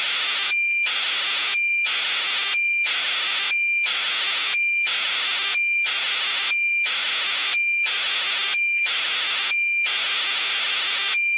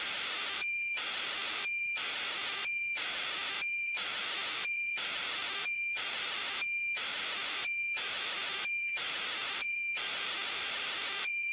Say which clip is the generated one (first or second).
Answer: second